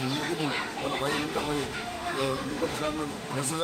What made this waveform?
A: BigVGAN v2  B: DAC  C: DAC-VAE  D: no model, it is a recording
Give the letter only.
C